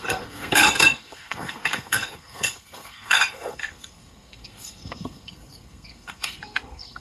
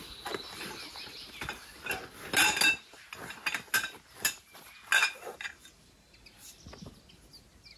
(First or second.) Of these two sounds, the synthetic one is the first